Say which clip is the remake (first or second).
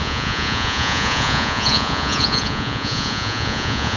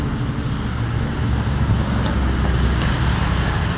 first